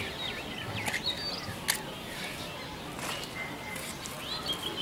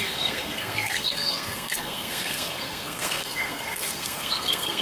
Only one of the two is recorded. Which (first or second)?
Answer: first